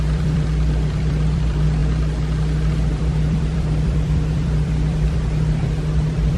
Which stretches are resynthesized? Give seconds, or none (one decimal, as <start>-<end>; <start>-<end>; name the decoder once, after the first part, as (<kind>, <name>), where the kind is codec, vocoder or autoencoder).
0.0-1.8 (vocoder, BigVGAN v2); 2.9-6.4